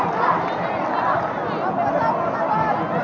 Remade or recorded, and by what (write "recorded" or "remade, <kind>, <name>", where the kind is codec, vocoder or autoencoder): recorded